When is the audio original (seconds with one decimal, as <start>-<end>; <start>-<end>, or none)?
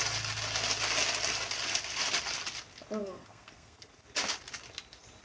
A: 0.0-3.0; 3.9-5.2